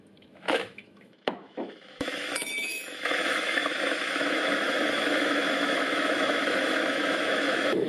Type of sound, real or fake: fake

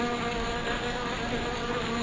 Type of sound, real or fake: real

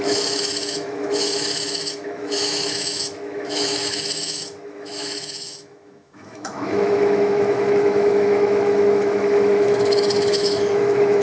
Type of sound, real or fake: fake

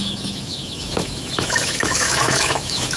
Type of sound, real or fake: fake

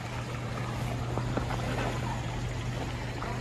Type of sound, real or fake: real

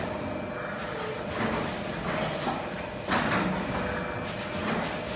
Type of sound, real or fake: real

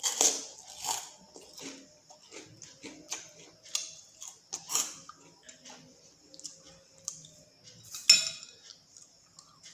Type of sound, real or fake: real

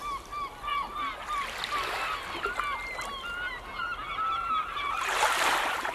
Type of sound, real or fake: real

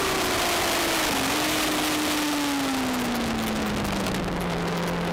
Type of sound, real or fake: real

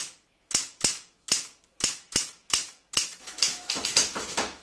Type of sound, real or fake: fake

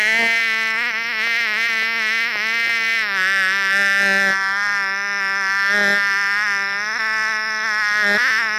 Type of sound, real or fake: real